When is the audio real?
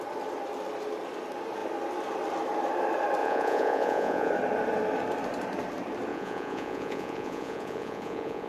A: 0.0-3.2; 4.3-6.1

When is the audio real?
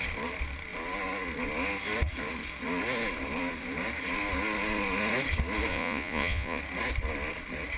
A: 0.0-5.7; 6.6-7.8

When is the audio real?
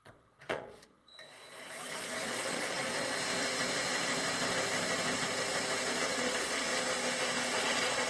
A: 2.9-6.0; 6.7-7.6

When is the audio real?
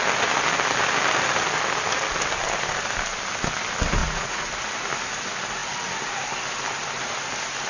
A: 0.0-4.0; 4.5-7.7